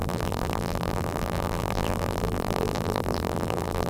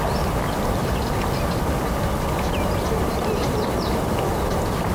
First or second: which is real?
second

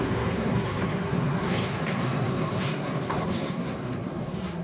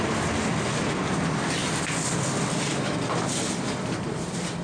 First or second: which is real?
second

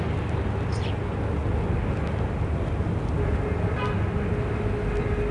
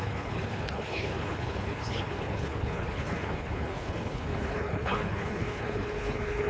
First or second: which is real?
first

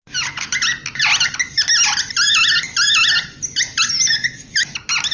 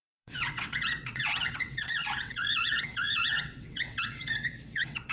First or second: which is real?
first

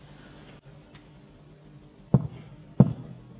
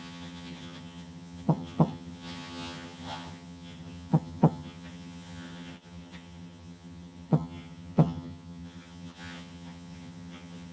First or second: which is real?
first